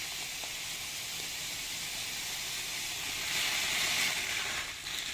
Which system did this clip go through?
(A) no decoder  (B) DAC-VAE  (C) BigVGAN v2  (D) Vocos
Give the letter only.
A